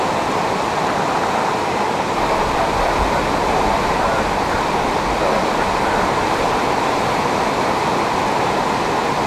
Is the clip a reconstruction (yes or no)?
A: no